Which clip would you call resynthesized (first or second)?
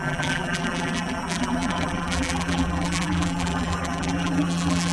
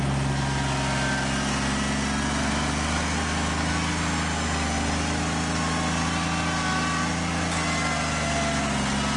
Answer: first